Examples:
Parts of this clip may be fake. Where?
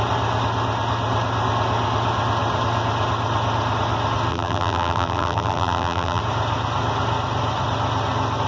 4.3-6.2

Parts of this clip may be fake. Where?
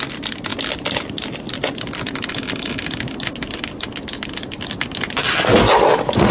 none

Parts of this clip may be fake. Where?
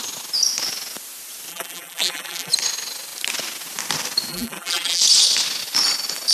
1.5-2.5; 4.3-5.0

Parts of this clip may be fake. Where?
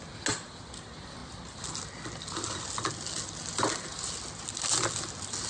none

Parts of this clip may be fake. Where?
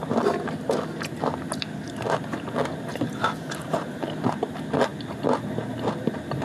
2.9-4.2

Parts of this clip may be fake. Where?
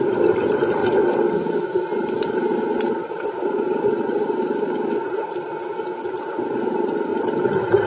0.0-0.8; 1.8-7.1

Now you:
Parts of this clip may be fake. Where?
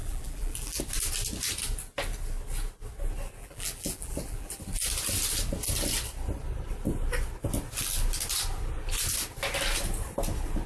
0.0-0.8; 3.4-4.6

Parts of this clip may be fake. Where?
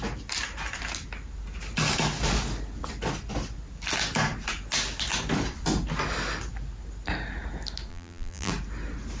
7.9-8.5